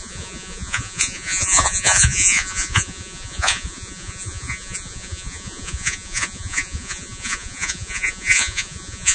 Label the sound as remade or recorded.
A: remade